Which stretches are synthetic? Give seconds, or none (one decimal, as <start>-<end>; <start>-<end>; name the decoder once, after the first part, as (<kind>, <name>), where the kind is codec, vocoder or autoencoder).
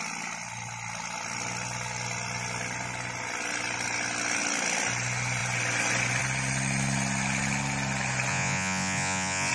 8.3-9.5 (vocoder, Vocos)